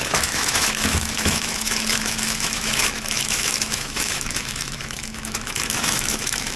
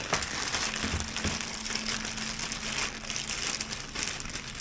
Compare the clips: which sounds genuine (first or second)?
second